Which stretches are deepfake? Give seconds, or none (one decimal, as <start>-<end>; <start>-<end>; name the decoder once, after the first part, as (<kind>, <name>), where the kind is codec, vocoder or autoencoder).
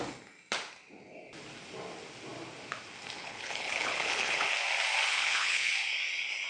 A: 3.2-4.5 (codec, HILCodec); 5.1-5.7